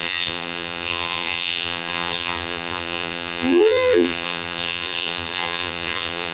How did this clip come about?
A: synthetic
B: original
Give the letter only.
A